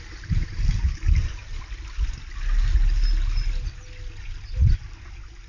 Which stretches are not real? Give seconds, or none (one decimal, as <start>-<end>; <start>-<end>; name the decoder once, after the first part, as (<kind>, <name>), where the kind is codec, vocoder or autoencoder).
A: 0.0-1.5 (vocoder, BigVGAN v2); 4.8-5.5